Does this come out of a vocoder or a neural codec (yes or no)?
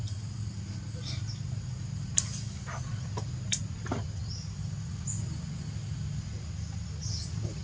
no